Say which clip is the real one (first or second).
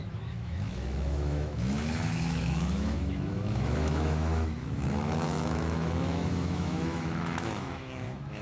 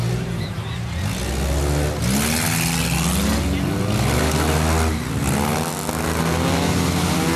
second